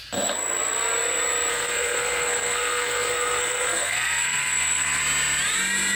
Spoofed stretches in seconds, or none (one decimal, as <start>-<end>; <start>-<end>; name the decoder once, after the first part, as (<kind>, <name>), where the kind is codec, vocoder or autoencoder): 1.5-5.0 (codec, SNAC)